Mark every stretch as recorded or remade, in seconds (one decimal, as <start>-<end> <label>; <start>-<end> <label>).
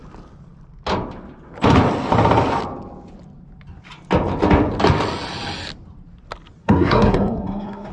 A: 0.0-6.6 recorded; 6.6-7.9 remade